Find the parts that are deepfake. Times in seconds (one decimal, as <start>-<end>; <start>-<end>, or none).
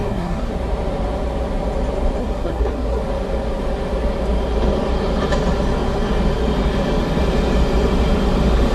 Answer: 0.0-0.5; 2.2-3.0